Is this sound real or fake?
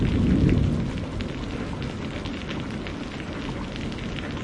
real